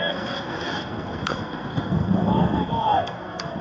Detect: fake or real fake